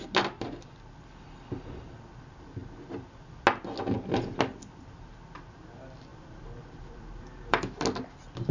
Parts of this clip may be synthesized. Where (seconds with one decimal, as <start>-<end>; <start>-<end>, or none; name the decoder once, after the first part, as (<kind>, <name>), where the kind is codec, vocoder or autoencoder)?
6.1-8.1 (vocoder, BigVGAN v2)